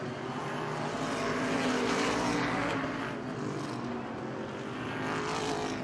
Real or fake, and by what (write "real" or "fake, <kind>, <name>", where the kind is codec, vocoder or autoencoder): real